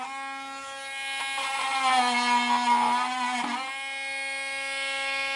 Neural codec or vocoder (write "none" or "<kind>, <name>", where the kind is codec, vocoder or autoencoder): none